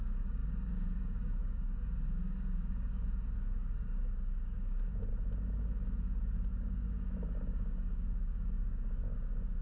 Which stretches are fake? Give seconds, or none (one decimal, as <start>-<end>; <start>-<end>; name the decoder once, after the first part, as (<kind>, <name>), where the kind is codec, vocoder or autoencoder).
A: 0.0-5.1 (codec, DAC); 6.5-9.6